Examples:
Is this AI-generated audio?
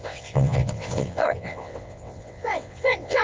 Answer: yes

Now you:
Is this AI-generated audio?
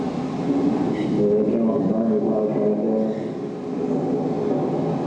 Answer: no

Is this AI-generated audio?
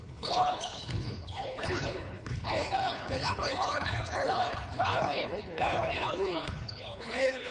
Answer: yes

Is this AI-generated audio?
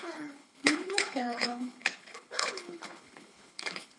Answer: yes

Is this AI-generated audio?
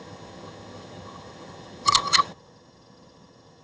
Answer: yes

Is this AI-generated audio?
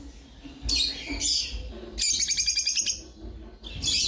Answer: no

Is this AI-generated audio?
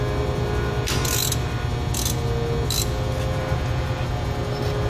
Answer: no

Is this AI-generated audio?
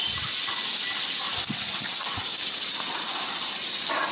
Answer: no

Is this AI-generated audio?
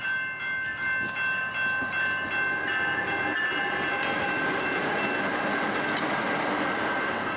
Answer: no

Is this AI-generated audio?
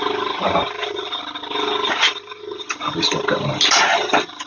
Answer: no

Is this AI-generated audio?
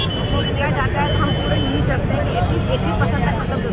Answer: no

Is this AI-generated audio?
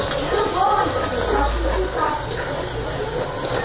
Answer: no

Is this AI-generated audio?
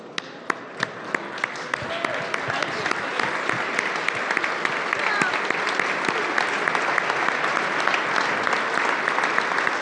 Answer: no